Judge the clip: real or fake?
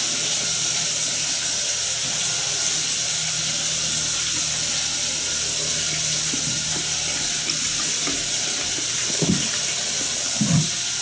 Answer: real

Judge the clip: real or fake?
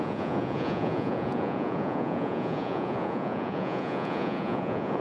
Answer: fake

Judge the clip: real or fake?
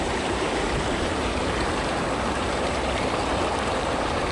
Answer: fake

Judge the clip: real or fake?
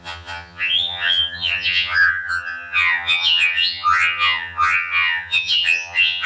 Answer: fake